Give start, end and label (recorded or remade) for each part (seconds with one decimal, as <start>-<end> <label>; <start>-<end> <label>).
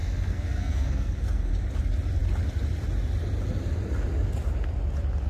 0.0-1.5 remade; 1.5-5.3 recorded